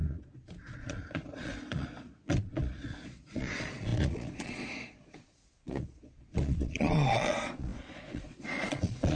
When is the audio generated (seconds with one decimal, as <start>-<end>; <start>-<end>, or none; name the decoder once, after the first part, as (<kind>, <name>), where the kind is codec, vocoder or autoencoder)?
0.0-9.2 (vocoder, Vocos)